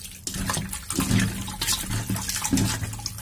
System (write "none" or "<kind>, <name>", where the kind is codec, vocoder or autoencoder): none